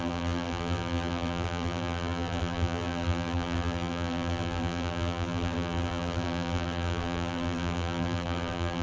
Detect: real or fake fake